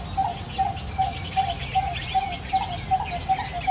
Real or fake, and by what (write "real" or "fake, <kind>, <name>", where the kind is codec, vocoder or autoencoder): real